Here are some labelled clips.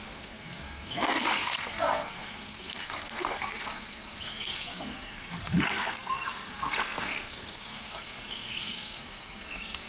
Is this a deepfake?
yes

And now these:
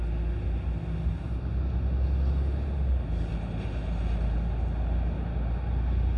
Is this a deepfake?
no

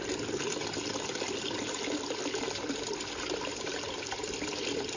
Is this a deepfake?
no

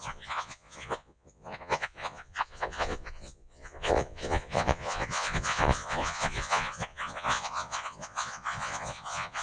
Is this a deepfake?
yes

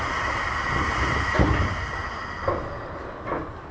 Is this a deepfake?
no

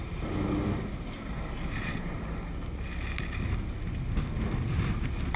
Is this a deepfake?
no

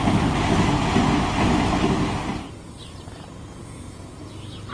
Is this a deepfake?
no